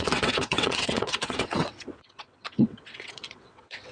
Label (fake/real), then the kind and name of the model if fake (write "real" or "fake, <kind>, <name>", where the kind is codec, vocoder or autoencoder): fake, vocoder, WaveNeXt